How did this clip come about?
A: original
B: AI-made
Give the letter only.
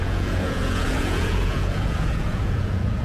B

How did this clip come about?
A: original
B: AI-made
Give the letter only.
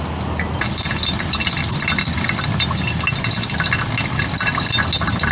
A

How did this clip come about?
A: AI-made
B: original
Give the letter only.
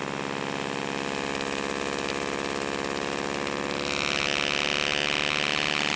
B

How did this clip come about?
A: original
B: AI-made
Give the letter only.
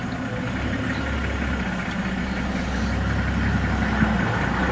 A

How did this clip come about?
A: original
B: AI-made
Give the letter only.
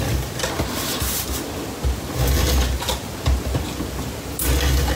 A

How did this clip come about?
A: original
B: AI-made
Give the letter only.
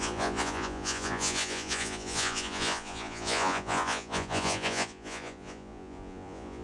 B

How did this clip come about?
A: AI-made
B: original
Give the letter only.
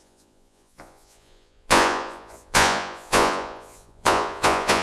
A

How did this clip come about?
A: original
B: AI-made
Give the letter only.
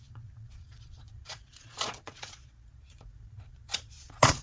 B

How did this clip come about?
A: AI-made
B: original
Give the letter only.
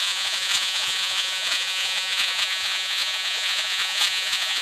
A